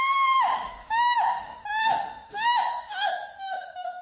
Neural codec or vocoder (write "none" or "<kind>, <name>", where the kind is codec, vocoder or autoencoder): autoencoder, DAC-VAE